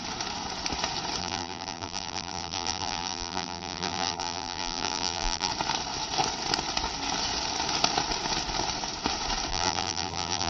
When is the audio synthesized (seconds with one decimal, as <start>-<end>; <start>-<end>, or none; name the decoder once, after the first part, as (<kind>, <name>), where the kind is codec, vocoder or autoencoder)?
1.2-5.5 (vocoder, BigVGAN v2); 9.5-10.5